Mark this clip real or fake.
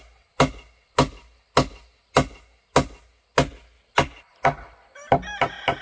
real